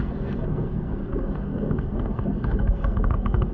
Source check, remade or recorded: remade